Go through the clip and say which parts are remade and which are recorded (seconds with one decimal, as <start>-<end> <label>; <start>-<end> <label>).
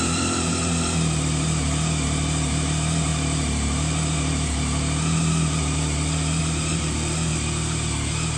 0.0-7.3 remade; 7.3-8.4 recorded